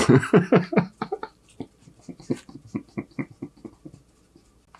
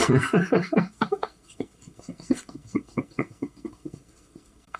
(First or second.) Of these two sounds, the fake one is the second